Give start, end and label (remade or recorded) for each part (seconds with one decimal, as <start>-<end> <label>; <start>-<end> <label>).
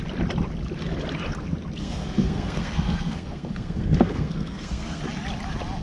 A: 0.0-1.8 recorded; 1.8-5.0 remade; 5.0-5.8 recorded